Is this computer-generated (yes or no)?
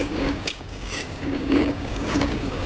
yes